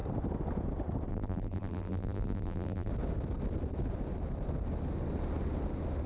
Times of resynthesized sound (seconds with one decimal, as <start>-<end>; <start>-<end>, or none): 1.1-2.9